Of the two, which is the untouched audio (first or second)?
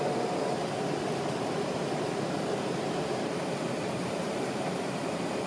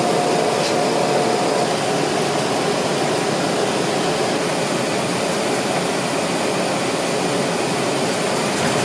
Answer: second